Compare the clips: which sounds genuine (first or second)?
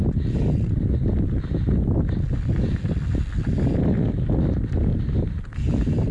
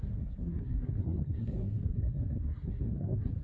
first